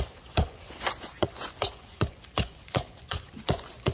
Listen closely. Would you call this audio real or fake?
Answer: fake